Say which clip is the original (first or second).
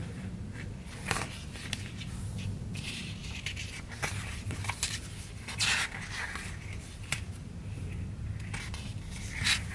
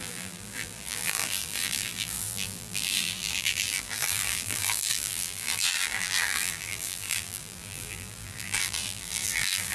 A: first